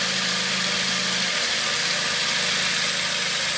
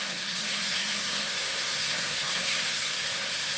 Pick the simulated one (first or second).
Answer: second